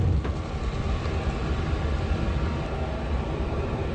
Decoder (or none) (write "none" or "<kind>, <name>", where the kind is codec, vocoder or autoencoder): none